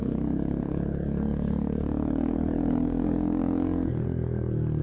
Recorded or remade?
remade